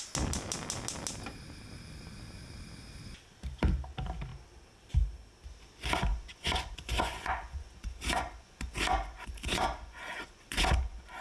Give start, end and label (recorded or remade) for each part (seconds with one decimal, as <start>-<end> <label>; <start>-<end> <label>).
0.0-6.1 recorded; 6.1-11.2 remade